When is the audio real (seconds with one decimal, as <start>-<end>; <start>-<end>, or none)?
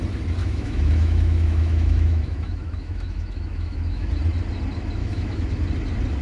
0.0-0.4; 4.1-5.0; 5.5-6.2